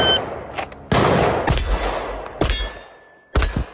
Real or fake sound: real